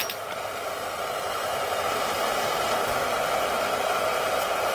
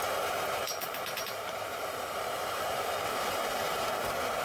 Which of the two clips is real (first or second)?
first